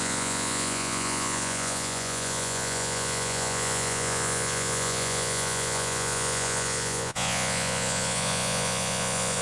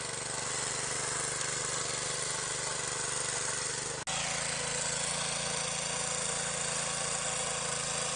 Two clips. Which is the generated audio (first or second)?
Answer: first